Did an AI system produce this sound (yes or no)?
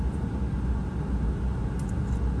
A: no